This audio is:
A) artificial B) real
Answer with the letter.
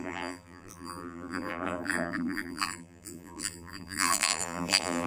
A